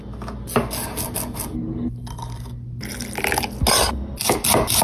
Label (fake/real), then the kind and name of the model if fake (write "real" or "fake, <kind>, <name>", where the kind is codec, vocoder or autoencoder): real